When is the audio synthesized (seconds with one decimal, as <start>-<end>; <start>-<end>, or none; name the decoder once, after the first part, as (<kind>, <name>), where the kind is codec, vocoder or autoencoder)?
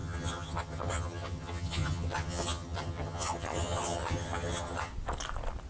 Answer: 0.0-4.9 (vocoder, HiFi-GAN)